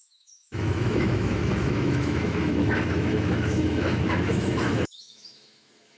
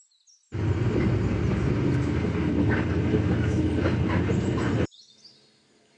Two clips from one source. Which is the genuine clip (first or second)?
second